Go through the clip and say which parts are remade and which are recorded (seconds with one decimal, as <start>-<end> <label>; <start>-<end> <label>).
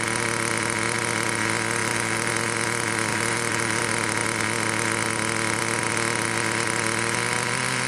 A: 0.0-1.8 recorded; 1.8-2.3 remade; 2.3-3.1 recorded; 3.1-3.9 remade; 3.9-7.9 recorded